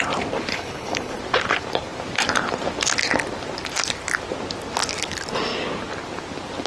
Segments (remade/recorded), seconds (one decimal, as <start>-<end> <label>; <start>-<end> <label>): 0.0-0.5 recorded; 0.5-1.2 remade; 1.2-6.7 recorded